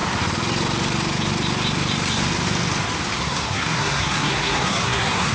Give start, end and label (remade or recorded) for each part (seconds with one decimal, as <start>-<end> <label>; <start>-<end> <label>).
0.0-3.2 recorded; 3.2-5.3 remade